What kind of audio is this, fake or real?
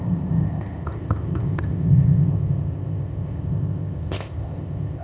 fake